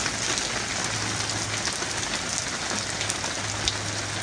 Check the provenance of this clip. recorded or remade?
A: recorded